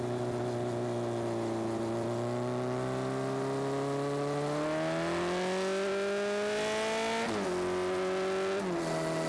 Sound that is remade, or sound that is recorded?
recorded